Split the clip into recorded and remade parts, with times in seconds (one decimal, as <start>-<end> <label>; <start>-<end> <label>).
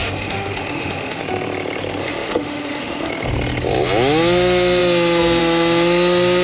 0.0-1.2 remade; 1.2-2.0 recorded; 2.0-3.1 remade; 3.1-6.4 recorded